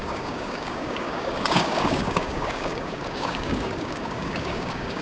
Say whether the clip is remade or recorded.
remade